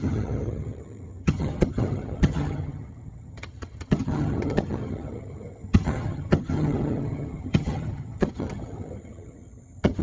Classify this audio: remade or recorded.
remade